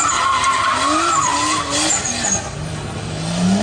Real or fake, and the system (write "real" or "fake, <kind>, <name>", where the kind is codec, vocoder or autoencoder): real